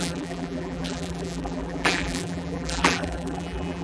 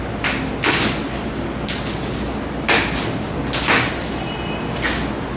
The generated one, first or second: first